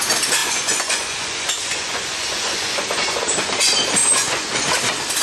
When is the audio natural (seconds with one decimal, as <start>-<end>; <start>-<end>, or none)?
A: 0.0-0.4; 3.5-4.0; 4.7-5.2